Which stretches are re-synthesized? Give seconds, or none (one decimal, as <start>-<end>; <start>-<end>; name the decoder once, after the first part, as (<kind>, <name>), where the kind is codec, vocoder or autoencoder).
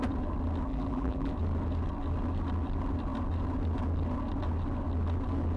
0.7-1.3 (vocoder, BigVGAN v2)